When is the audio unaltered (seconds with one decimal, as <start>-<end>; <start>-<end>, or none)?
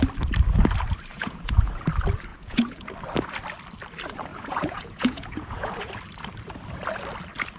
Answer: 0.0-1.1; 1.7-2.3; 2.9-4.3; 5.9-7.6